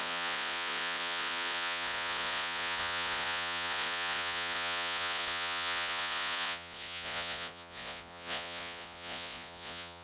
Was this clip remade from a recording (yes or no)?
yes